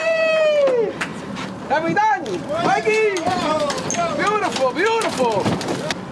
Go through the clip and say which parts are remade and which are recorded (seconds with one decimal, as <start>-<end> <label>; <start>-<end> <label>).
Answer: 0.0-1.1 recorded; 1.1-3.6 remade; 3.6-4.1 recorded; 4.1-4.7 remade; 4.7-6.1 recorded